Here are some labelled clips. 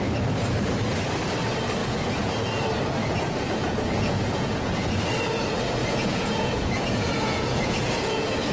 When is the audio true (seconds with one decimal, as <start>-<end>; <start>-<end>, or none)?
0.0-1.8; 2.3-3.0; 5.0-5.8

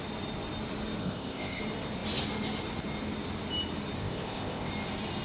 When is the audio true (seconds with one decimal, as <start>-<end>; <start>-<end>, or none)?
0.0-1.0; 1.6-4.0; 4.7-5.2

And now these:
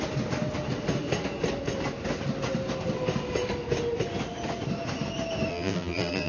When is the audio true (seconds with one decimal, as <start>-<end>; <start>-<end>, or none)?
0.0-5.5

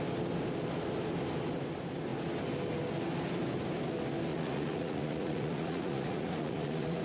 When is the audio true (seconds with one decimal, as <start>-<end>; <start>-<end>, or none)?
0.0-4.3

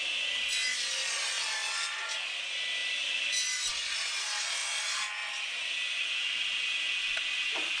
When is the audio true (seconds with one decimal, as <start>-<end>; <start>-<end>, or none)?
0.0-7.8

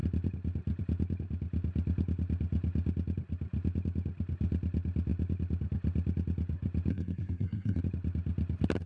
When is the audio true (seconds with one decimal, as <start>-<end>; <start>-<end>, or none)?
0.0-6.9; 7.8-8.9

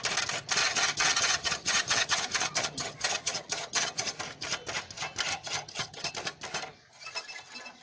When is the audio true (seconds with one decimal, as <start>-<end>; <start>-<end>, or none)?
0.0-0.6; 4.2-5.3; 6.1-7.8

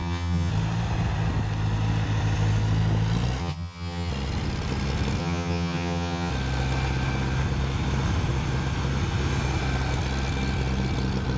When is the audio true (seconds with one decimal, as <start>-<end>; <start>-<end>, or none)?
0.5-3.4; 4.1-5.2; 6.3-11.4